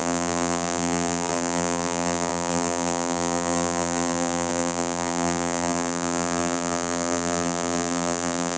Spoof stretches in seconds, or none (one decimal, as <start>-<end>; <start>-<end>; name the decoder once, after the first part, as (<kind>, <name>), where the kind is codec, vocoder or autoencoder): 0.0-8.6 (vocoder, BigVGAN v2)